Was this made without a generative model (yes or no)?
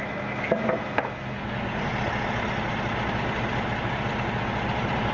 yes